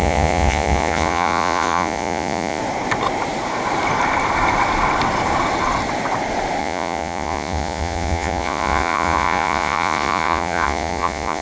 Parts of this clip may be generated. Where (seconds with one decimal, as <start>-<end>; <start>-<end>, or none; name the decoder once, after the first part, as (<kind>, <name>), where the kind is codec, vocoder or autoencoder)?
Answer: 0.0-2.6 (vocoder, Vocos); 6.6-11.4